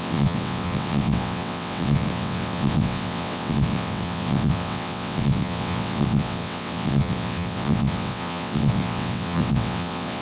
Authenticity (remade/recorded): remade